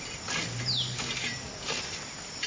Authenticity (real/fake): real